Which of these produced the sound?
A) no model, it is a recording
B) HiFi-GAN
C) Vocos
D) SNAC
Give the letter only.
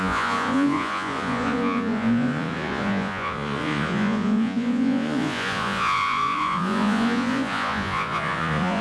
C